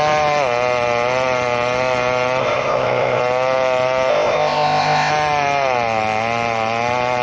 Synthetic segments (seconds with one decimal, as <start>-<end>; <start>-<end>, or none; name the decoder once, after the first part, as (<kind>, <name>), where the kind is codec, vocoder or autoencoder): 2.4-3.2 (codec, ZipCodec); 4.1-5.1